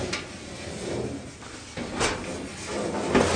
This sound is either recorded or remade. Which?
recorded